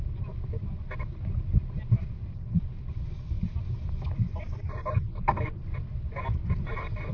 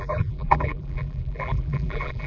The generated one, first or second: second